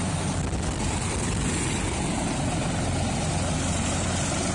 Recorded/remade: recorded